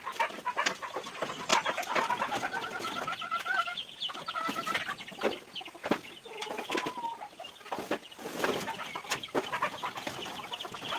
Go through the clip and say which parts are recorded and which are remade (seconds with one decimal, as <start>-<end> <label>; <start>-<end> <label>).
0.0-11.0 recorded